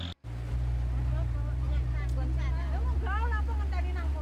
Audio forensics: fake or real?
real